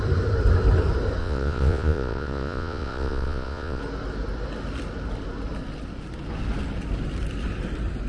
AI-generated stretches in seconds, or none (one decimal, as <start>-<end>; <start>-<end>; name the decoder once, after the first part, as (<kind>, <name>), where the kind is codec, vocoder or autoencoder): 1.2-3.8 (vocoder, Vocos)